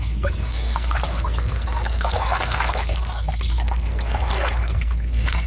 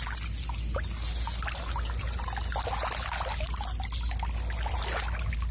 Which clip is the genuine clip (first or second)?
second